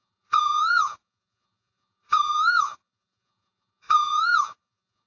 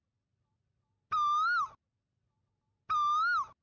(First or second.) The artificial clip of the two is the first